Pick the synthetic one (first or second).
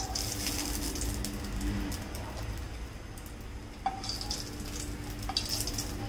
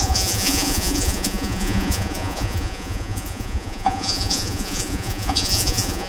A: second